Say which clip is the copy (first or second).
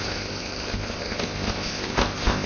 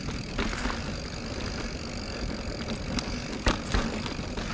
first